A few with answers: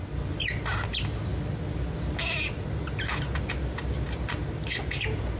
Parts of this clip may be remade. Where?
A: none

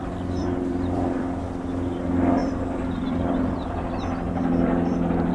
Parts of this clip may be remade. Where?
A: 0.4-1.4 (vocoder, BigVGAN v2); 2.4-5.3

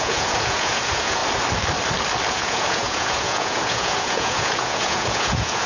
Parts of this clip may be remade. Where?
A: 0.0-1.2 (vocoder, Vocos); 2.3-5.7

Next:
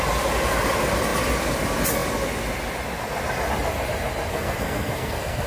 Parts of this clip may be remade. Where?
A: 4.3-5.5 (codec, SNAC)

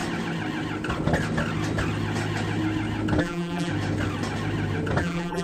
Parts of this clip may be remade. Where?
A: 3.2-3.7 (vocoder, BigVGAN v2); 5.0-5.4